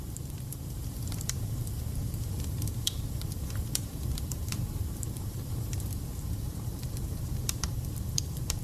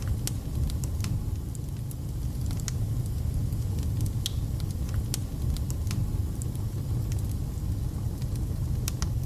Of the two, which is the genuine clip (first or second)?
second